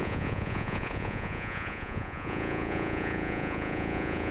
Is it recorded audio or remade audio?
remade